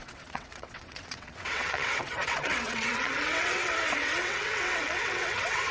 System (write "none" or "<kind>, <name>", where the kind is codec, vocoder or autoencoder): vocoder, WaveNeXt